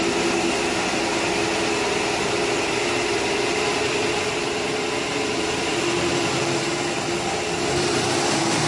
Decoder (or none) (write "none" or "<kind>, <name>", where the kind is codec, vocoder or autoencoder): none